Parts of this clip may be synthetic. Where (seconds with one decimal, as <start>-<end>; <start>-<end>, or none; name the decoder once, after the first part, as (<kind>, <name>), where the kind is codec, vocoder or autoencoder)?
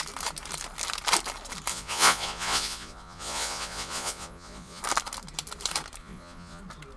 1.7-4.8 (vocoder, Vocos); 6.0-6.6